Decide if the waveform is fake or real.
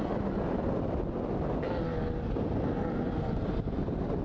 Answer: real